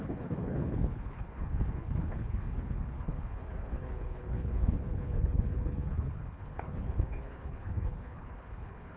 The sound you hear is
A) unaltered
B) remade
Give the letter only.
B